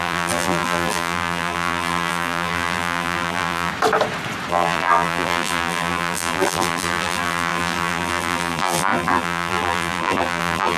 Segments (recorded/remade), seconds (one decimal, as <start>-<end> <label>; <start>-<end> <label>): 0.0-3.7 remade; 3.7-4.5 recorded; 4.5-10.8 remade